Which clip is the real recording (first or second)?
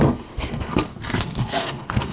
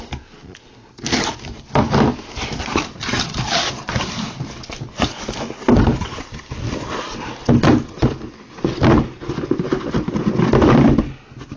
second